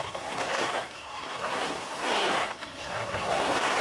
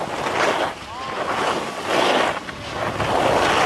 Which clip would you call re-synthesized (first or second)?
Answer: first